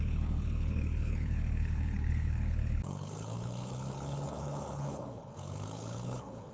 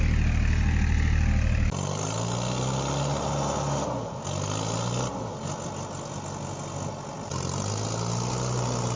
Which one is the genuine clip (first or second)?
second